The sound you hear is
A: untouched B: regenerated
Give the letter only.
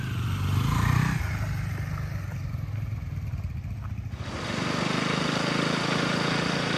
A